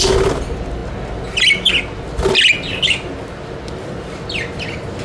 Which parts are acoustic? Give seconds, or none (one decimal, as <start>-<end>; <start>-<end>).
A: 0.0-5.0